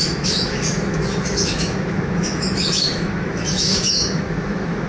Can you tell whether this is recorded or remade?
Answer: remade